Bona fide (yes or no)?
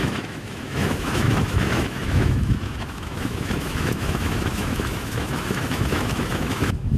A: no